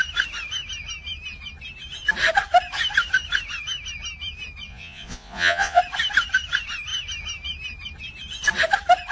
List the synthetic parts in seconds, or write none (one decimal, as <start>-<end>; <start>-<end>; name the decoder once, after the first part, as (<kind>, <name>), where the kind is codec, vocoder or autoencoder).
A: 4.7-5.8 (vocoder, Vocos)